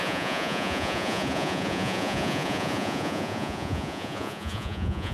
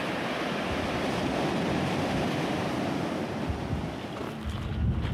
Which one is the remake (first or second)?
first